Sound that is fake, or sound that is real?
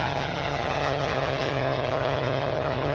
fake